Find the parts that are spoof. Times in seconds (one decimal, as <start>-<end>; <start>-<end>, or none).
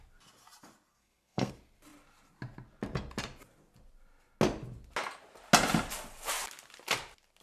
0.9-1.5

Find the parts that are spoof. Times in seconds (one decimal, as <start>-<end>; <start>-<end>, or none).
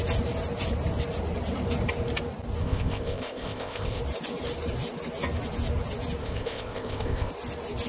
2.6-4.0; 6.2-7.3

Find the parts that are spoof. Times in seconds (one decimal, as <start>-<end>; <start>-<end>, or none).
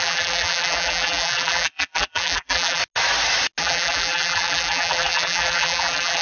0.0-2.8; 3.6-6.2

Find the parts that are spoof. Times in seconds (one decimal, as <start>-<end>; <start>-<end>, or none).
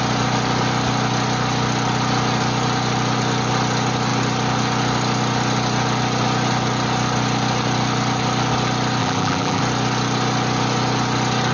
9.0-9.6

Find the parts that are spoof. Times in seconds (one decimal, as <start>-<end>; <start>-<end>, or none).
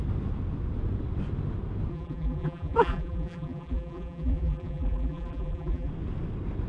1.9-5.9